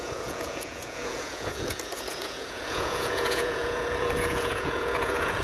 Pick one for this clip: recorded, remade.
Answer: remade